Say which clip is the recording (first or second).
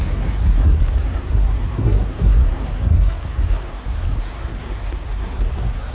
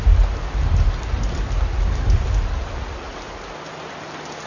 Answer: second